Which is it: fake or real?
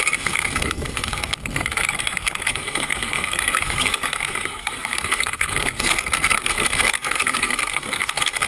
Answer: fake